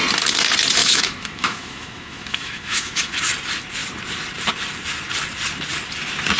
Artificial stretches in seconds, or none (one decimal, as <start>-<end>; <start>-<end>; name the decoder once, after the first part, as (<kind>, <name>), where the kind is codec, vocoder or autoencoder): 0.8-3.1 (autoencoder, DAC-VAE)